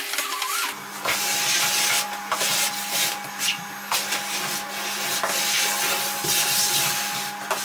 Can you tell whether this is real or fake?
real